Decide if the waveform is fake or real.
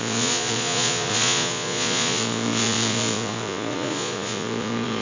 fake